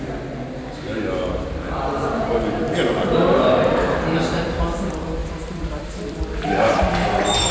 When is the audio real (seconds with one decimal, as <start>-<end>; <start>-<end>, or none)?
0.0-5.2